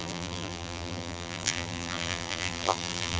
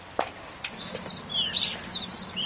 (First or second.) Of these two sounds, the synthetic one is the first